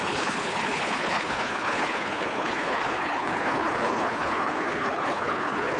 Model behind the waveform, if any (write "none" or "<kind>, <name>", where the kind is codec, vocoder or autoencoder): codec, HILCodec